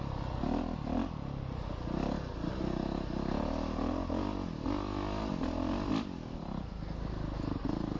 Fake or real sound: real